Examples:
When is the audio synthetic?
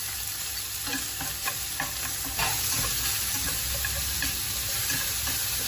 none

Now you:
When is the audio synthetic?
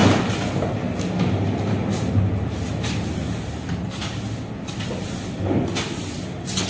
none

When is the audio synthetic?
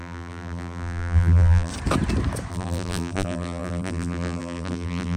0.0-1.7 (vocoder, BigVGAN v2); 2.5-5.2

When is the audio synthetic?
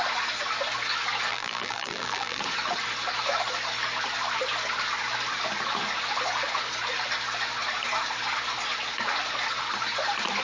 1.3-2.4 (vocoder, BigVGAN v2)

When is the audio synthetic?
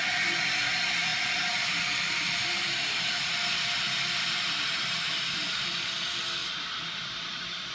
1.1-5.7 (vocoder, BigVGAN v2); 6.4-7.7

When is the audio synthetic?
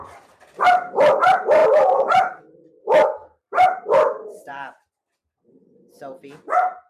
1.6-2.4 (vocoder, BigVGAN v2); 3.2-4.9